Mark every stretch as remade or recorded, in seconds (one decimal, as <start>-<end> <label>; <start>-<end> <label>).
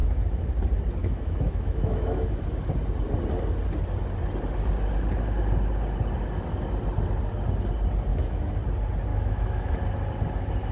0.0-0.5 remade; 0.5-1.0 recorded; 1.0-2.4 remade; 2.4-8.1 recorded; 8.1-8.6 remade; 8.6-9.1 recorded; 9.1-9.7 remade; 9.7-10.7 recorded